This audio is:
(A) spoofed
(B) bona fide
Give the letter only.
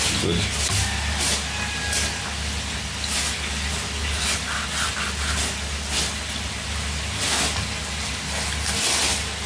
B